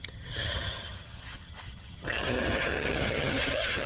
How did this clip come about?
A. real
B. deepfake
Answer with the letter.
B